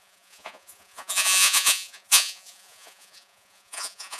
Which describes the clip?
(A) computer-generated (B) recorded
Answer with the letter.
A